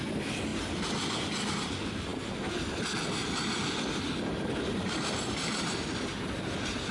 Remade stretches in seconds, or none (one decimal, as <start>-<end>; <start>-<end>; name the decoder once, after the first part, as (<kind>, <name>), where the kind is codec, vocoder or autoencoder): none